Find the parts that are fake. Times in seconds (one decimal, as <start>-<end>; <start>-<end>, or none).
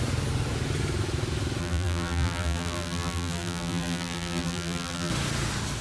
1.6-5.1